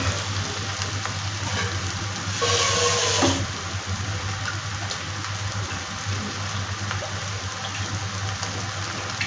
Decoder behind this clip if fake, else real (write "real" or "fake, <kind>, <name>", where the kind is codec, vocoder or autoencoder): real